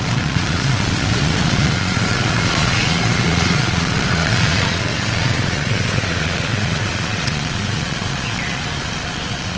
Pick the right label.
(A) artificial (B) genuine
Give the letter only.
A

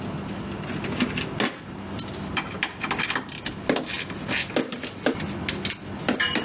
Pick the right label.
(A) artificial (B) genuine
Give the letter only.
B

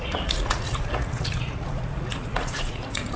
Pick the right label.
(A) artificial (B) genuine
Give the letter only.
A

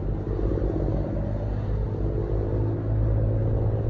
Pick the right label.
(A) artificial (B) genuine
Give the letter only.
B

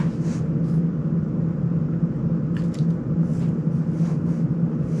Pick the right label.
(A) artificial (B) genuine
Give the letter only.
B